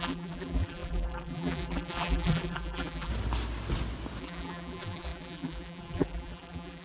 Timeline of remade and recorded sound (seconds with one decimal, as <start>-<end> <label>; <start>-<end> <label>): 0.0-3.1 remade; 3.1-4.2 recorded; 4.2-6.8 remade